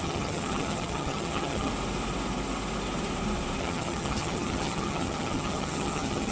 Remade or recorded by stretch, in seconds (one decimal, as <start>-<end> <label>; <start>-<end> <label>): 0.0-1.7 remade; 1.7-3.6 recorded; 3.6-6.3 remade